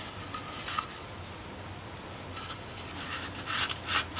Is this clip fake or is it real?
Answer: real